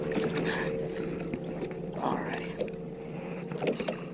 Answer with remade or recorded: recorded